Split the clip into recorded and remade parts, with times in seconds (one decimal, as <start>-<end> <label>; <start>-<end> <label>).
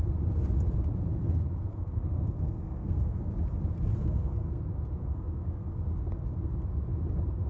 0.0-1.7 recorded; 1.7-3.3 remade; 3.3-3.9 recorded; 3.9-4.6 remade; 4.6-5.0 recorded; 5.0-5.7 remade; 5.7-7.5 recorded